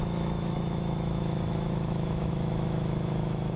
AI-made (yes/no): yes